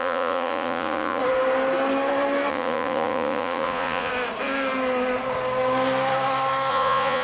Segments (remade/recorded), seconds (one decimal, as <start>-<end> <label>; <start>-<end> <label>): 0.0-1.2 remade; 1.2-2.5 recorded; 2.5-4.1 remade; 4.1-6.7 recorded; 6.7-7.2 remade